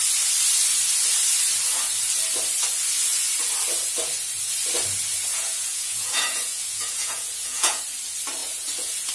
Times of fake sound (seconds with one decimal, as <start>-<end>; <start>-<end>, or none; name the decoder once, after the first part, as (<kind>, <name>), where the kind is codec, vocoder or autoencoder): 5.3-7.8 (vocoder, Vocos); 8.4-9.1